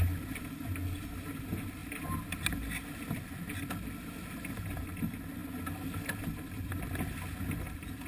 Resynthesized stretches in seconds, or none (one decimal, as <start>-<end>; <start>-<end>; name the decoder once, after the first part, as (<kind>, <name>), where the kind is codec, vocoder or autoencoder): none

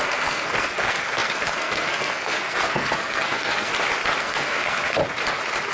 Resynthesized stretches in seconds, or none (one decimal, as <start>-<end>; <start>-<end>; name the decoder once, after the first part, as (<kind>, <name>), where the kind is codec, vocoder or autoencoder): 0.0-3.7 (codec, SNAC); 4.2-5.0

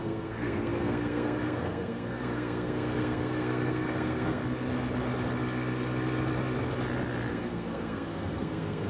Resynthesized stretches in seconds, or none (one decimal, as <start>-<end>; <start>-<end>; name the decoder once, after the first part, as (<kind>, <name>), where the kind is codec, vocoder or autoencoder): 0.0-4.4 (codec, SNAC); 7.3-8.9